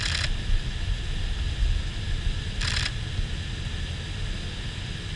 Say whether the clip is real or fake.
real